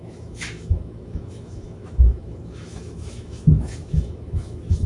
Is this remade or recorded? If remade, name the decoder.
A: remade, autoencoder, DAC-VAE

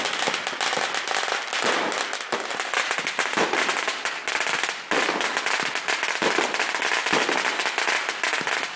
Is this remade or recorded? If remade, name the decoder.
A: recorded